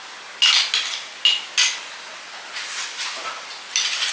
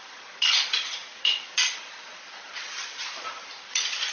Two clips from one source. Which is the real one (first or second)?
first